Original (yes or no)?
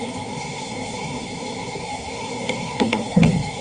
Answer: no